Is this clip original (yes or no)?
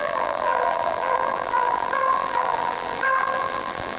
no